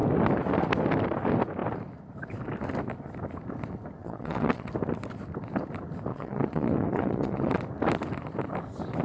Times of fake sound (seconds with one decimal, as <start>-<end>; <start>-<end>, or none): 4.0-4.7; 6.1-7.6